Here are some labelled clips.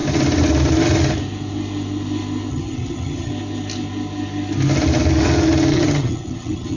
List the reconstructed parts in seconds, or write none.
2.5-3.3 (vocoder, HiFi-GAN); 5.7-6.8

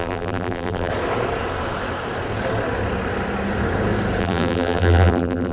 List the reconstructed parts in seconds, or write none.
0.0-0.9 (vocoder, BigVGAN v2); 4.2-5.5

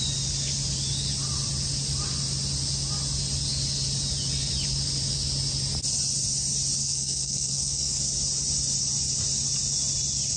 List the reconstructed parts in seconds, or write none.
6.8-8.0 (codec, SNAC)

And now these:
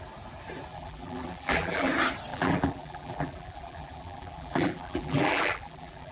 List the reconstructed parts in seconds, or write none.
0.7-1.9 (vocoder, BigVGAN v2); 2.3-6.1

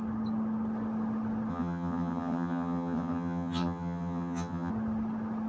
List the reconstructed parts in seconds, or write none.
1.5-4.7 (vocoder, HiFi-GAN)

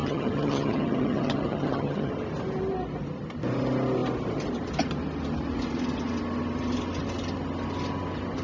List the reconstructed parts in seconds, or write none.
0.0-2.1 (vocoder, HiFi-GAN)

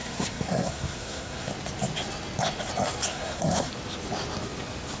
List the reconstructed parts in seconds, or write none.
0.0-1.5 (codec, SNAC); 3.1-3.7